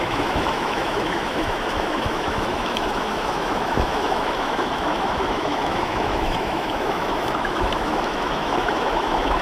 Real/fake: fake